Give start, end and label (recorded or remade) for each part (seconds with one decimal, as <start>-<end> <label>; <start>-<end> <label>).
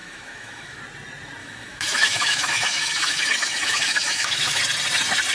0.0-0.8 remade; 0.8-1.4 recorded; 1.4-4.6 remade; 4.6-5.3 recorded